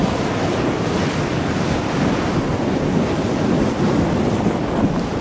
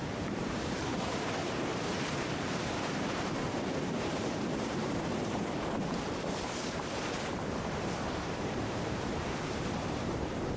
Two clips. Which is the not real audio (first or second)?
second